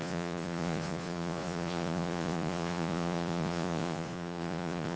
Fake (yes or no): yes